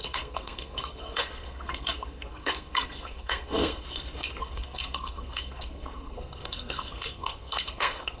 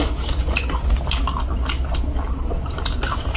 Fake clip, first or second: first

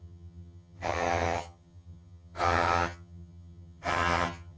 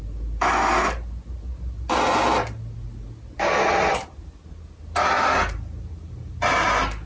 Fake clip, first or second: first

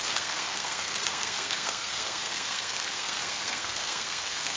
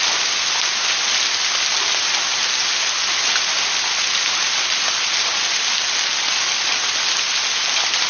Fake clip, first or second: first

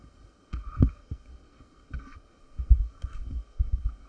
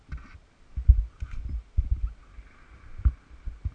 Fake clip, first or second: first